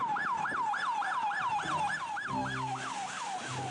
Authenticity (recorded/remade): recorded